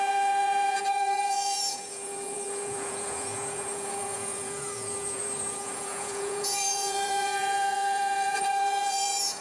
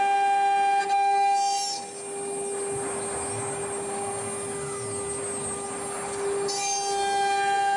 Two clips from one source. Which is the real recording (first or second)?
second